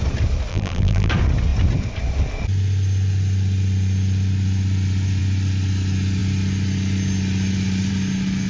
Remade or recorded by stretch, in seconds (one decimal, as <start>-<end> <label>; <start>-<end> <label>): 0.0-0.5 recorded; 0.5-1.1 remade; 1.1-8.5 recorded